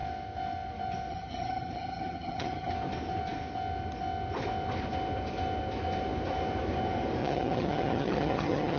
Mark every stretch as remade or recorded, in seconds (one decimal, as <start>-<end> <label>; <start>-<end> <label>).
0.0-1.1 recorded; 1.1-2.7 remade; 2.7-7.2 recorded; 7.2-8.8 remade